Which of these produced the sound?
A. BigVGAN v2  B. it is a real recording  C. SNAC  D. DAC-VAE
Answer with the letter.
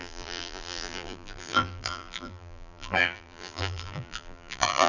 A